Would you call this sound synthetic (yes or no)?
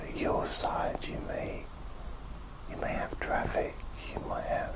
no